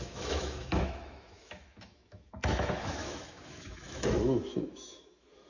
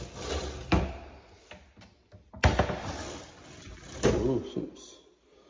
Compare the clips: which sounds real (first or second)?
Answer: second